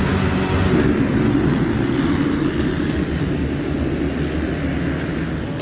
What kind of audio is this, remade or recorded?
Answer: recorded